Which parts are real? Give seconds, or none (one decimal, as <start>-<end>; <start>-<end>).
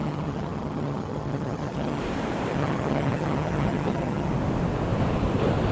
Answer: 2.0-2.5; 4.3-5.7